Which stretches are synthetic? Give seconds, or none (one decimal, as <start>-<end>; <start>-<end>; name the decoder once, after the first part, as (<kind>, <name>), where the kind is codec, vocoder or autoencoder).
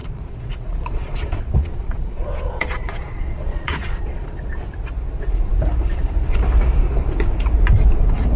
0.0-4.5 (vocoder, Vocos)